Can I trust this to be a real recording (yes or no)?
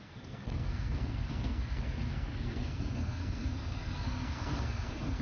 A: no